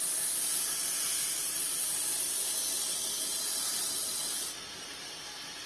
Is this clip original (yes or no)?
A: yes